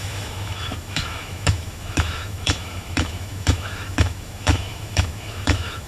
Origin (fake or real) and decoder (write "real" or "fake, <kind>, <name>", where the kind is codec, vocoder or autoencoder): fake, autoencoder, DAC-VAE